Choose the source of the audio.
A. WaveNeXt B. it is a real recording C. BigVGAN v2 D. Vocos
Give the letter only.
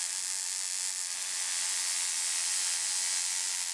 B